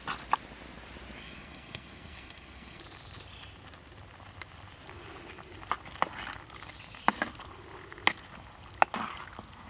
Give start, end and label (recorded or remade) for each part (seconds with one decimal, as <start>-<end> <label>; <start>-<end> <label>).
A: 0.0-1.2 recorded; 1.2-2.8 remade; 2.8-9.7 recorded